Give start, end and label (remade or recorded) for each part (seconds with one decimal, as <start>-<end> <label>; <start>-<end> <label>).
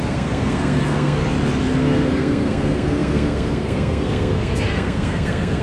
0.0-1.2 remade; 1.2-1.8 recorded; 1.8-5.6 remade